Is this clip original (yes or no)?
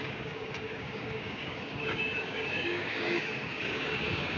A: no